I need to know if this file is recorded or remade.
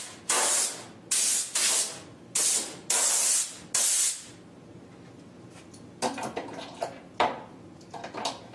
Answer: recorded